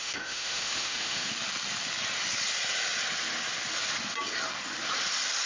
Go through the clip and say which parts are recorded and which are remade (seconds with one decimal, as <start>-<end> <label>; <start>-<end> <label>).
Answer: 0.0-1.3 remade; 1.3-5.5 recorded

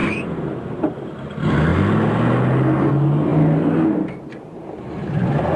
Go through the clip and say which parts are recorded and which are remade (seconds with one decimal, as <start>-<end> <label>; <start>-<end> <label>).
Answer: 0.0-5.6 recorded